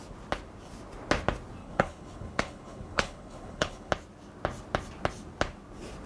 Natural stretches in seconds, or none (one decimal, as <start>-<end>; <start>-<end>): 0.0-1.6; 3.9-6.1